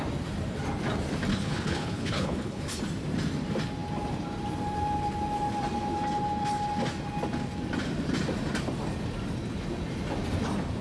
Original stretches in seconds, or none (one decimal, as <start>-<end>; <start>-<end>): 0.0-1.3; 2.8-10.8